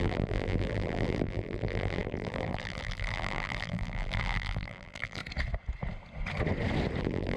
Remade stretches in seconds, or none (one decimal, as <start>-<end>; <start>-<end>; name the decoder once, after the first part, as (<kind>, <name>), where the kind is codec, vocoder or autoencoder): 0.0-5.2 (vocoder, BigVGAN v2); 7.0-7.4